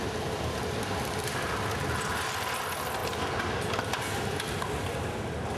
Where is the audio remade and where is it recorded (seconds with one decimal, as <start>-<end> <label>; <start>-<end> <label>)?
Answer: 0.0-5.6 recorded